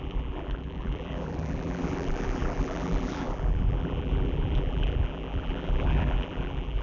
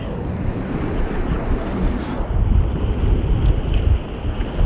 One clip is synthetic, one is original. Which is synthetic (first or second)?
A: first